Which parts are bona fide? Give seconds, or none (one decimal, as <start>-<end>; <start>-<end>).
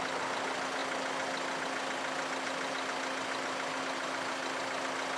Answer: 0.0-5.2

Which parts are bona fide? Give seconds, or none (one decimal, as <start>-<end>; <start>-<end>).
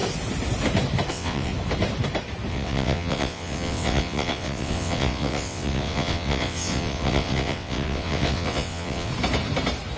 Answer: 0.0-1.1; 1.5-2.5; 9.1-10.0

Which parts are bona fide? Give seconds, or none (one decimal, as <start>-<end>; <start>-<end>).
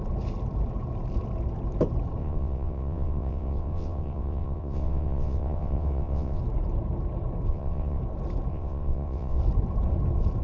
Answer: 0.0-2.2; 6.4-7.5; 8.0-8.5; 9.4-10.4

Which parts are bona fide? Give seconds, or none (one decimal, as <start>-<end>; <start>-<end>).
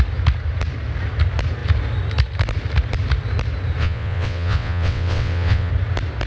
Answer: 0.0-3.8; 5.7-6.3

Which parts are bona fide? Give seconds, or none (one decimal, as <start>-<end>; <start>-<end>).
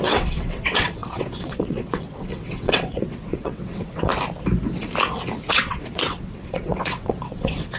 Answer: 4.1-5.5